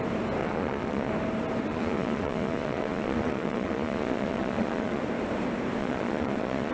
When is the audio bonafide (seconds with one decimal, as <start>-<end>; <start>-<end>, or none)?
0.0-0.4; 1.1-1.7; 5.0-5.8